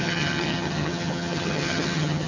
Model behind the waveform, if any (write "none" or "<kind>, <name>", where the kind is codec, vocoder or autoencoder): vocoder, HiFi-GAN